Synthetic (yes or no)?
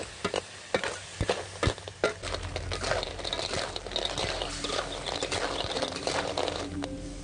no